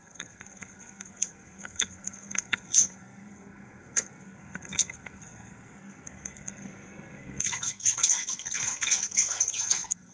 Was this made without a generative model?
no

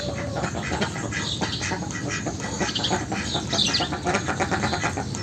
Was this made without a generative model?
yes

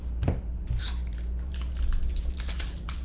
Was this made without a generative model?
no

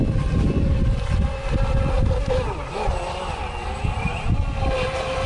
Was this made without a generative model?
yes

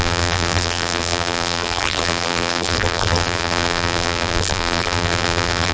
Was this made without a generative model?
no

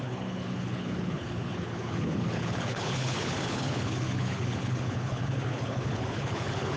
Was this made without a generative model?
no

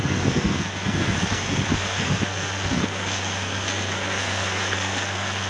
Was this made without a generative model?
no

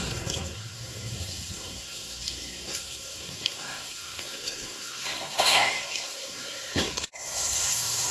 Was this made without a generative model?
no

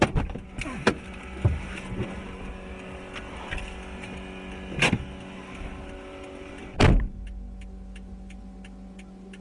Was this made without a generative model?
yes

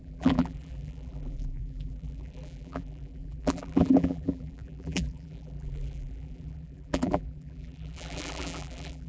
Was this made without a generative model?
no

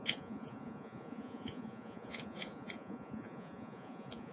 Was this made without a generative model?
no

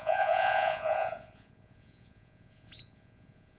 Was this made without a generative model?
no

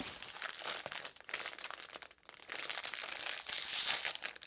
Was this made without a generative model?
yes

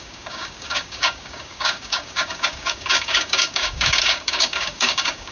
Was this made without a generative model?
no